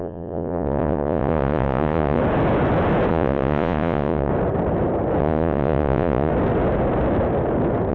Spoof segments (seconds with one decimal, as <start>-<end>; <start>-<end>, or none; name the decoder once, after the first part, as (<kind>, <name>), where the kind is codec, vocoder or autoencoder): 0.0-2.2 (vocoder, Vocos); 3.1-4.3; 5.2-6.3